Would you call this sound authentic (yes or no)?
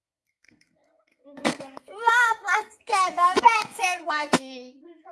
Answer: no